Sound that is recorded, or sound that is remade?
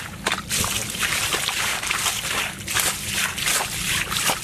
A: remade